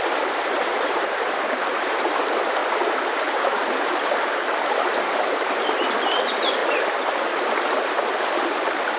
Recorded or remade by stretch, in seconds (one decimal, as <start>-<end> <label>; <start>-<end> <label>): 0.0-2.6 remade; 2.6-3.2 recorded; 3.2-9.0 remade